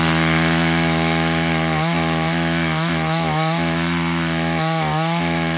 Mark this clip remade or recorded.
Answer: remade